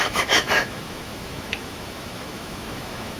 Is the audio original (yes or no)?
no